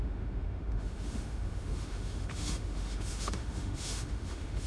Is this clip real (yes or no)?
no